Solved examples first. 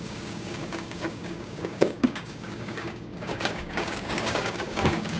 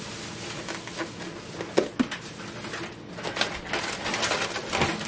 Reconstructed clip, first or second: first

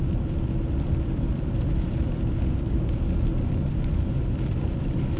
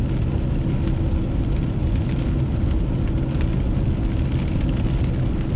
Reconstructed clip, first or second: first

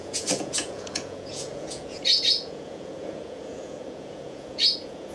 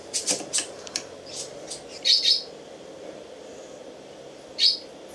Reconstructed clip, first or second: first